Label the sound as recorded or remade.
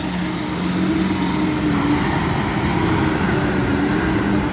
recorded